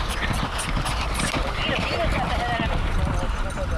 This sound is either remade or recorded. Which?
recorded